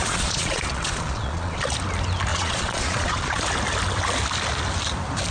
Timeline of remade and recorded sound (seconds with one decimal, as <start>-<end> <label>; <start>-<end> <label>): 0.0-1.6 remade; 1.6-2.3 recorded; 2.3-3.4 remade; 3.4-5.3 recorded